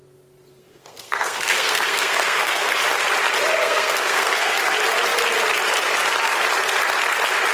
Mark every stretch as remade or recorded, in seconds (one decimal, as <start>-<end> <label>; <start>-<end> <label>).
0.0-0.6 recorded; 0.6-2.8 remade; 2.8-3.6 recorded; 3.6-4.6 remade; 4.6-7.5 recorded